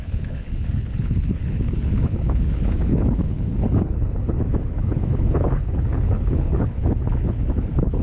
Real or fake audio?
fake